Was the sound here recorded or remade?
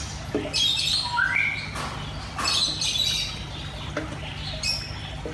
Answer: recorded